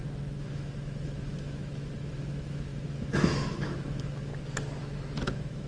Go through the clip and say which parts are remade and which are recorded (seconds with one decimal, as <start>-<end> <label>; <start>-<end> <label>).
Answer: 0.0-4.3 remade; 4.3-4.8 recorded; 4.8-5.7 remade